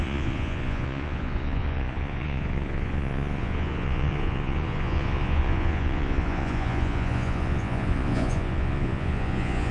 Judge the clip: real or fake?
fake